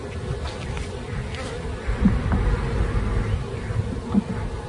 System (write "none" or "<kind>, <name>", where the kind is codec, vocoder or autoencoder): none